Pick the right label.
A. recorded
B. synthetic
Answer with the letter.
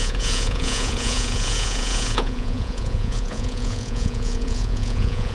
B